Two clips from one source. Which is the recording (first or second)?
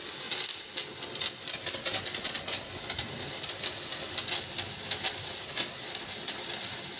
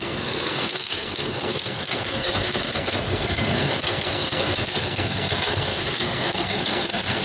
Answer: first